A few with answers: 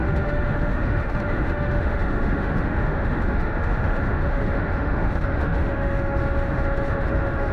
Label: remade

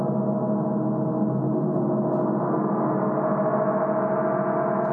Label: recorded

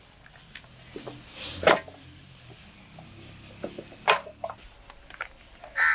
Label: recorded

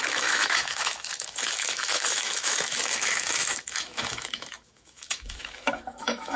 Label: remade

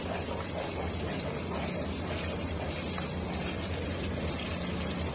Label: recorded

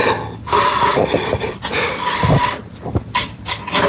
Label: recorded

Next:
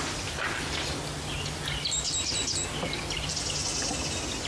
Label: recorded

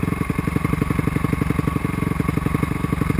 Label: recorded